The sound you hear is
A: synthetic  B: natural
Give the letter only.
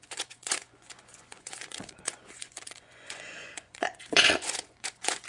A